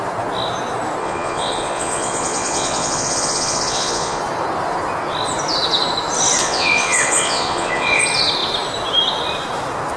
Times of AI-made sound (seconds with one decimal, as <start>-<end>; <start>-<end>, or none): 1.0-4.2; 6.4-8.0